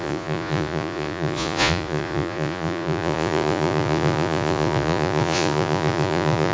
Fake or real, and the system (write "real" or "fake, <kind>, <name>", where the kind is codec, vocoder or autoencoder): fake, vocoder, Vocos